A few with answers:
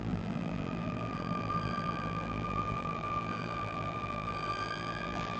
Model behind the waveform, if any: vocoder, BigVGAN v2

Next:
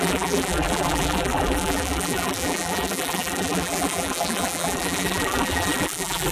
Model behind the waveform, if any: vocoder, BigVGAN v2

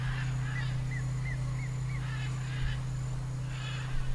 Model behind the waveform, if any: none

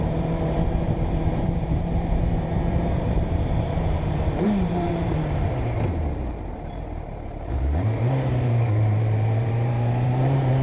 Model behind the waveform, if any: vocoder, BigVGAN v2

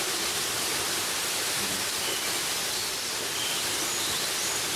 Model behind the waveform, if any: none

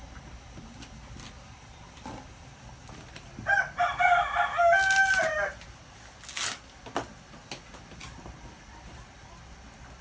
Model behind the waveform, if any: none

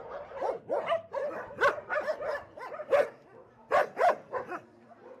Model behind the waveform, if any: vocoder, BigVGAN v2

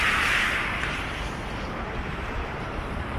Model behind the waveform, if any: vocoder, BigVGAN v2